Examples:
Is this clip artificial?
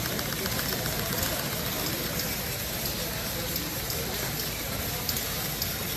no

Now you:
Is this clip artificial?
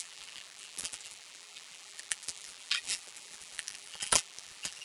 yes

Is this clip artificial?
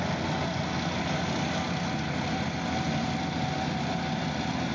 no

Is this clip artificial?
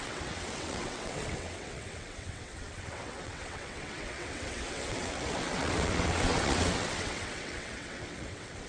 yes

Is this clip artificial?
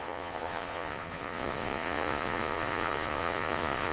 yes